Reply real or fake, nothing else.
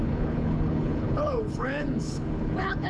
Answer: fake